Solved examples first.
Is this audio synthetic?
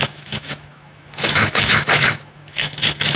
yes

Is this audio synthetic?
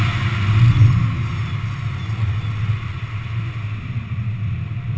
no